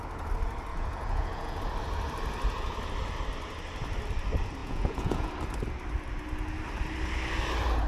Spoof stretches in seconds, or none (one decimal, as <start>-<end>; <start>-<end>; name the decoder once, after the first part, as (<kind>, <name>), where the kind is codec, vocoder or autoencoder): 0.7-1.6 (vocoder, Vocos); 4.6-5.3